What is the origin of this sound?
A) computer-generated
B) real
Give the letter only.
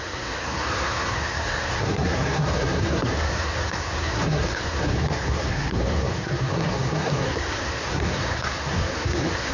A